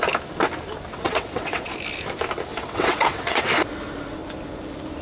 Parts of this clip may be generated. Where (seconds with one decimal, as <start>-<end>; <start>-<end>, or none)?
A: 0.9-1.7; 2.5-3.5